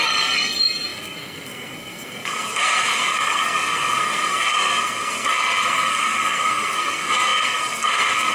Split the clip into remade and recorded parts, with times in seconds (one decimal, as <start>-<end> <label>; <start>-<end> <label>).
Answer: 0.0-8.3 remade